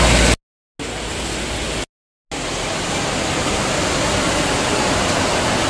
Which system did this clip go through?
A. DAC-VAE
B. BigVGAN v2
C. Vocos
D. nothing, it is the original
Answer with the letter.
D